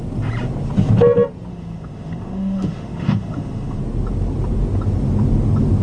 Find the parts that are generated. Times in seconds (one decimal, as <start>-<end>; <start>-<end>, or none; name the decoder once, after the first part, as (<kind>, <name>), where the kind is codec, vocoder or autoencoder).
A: 1.5-3.8 (autoencoder, DAC-VAE)